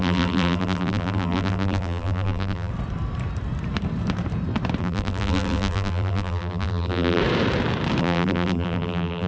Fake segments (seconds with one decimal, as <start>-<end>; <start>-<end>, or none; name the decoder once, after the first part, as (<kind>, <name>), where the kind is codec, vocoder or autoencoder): 0.0-2.7 (vocoder, BigVGAN v2); 4.8-7.2; 8.0-9.3